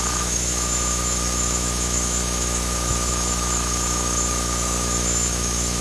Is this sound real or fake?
fake